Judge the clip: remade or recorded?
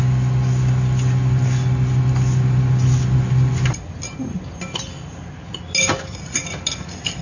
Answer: recorded